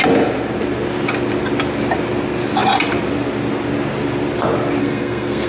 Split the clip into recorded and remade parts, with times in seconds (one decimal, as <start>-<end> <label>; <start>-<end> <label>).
0.0-4.8 recorded; 4.8-5.5 remade